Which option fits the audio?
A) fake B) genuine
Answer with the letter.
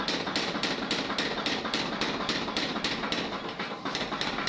A